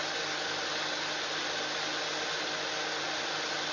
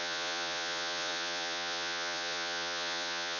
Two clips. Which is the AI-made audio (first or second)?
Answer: second